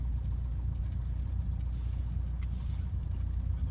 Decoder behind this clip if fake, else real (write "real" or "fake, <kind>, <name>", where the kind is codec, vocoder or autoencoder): real